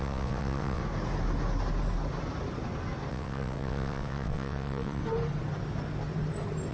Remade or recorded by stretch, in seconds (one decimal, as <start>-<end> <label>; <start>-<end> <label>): 0.0-0.8 remade; 0.8-3.1 recorded; 3.1-5.0 remade; 5.0-6.7 recorded

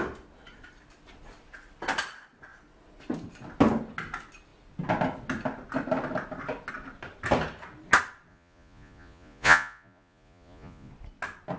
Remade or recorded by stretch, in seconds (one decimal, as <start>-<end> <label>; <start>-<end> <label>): 0.0-8.3 recorded; 8.3-10.9 remade; 10.9-11.6 recorded

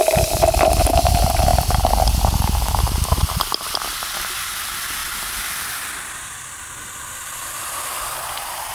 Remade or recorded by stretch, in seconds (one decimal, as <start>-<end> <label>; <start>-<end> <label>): 0.0-8.7 recorded